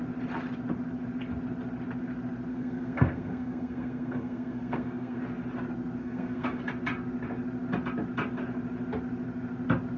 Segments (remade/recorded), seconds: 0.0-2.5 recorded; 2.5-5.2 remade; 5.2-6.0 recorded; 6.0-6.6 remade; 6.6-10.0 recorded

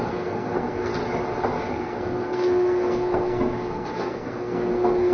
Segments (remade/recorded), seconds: 0.0-0.9 remade; 0.9-1.7 recorded; 1.7-5.1 remade